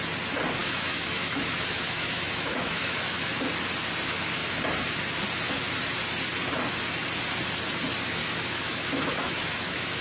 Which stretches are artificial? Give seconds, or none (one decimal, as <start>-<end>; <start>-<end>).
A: 0.6-3.3; 8.2-10.0